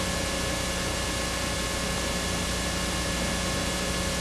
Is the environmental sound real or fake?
real